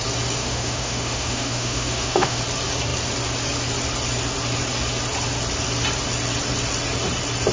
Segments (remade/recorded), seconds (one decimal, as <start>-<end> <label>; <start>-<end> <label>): 0.0-0.4 recorded; 0.4-2.4 remade; 2.4-7.5 recorded

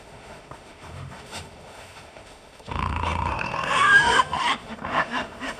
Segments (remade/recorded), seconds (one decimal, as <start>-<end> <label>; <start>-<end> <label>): 0.0-5.6 remade

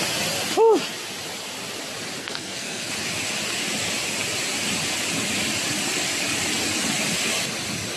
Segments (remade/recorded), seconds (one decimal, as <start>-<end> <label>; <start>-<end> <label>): 0.0-2.2 recorded; 2.2-2.9 remade; 2.9-8.0 recorded

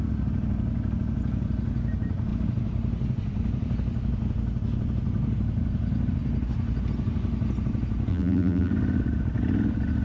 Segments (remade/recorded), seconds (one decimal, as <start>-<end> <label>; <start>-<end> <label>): 0.0-8.1 recorded; 8.1-8.7 remade; 8.7-10.0 recorded

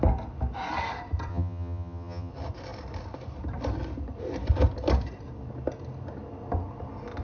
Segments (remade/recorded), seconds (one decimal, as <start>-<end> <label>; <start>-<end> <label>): 0.0-1.3 recorded; 1.3-2.3 remade; 2.3-7.2 recorded

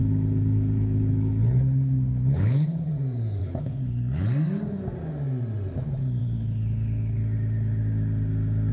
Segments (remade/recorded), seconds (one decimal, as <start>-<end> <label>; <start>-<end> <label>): 0.0-2.9 remade; 2.9-3.4 recorded; 3.4-4.0 remade; 4.0-6.2 recorded; 6.2-7.2 remade; 7.2-8.7 recorded